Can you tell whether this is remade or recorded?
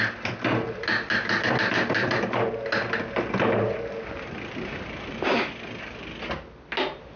recorded